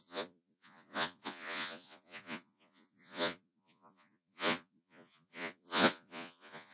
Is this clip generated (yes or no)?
yes